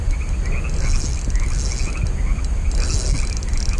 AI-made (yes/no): no